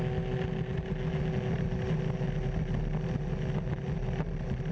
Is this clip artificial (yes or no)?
no